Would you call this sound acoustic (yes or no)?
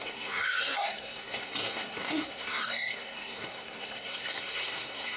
no